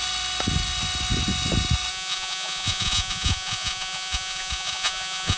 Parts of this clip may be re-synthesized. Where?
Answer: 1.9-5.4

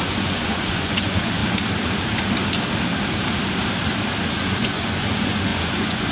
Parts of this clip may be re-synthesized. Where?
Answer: 0.0-1.4; 4.4-6.1